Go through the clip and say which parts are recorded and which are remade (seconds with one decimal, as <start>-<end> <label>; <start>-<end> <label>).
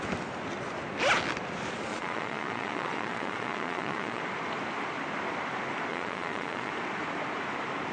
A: 0.0-1.9 recorded; 1.9-4.2 remade; 4.2-5.9 recorded; 5.9-6.7 remade; 6.7-7.9 recorded